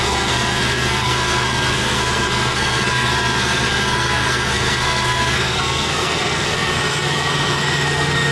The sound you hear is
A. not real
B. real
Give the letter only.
A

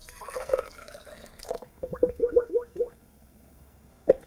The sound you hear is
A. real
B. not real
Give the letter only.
B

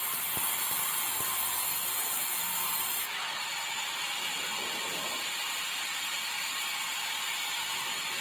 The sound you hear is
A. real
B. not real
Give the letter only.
A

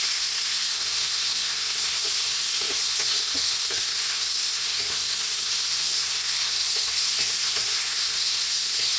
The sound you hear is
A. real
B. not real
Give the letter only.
B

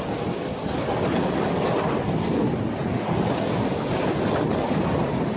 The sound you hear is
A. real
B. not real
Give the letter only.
A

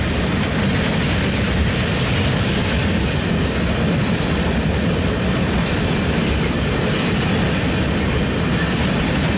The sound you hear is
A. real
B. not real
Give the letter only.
A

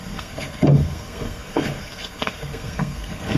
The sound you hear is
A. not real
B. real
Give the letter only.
A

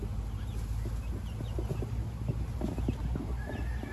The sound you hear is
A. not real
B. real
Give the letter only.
B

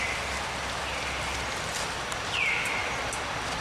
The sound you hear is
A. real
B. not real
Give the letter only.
A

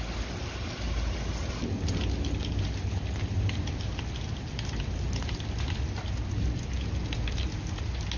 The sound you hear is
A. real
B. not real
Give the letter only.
A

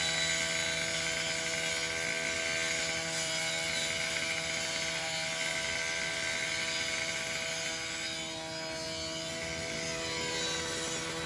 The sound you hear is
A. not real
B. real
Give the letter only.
B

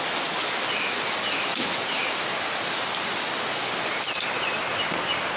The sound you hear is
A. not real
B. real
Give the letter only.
B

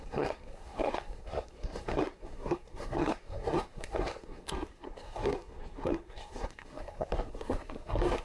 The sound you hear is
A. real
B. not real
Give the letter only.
B